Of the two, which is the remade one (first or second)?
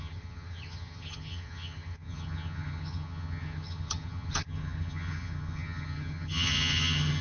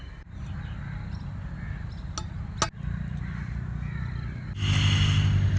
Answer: first